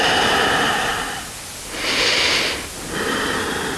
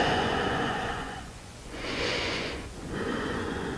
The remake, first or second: second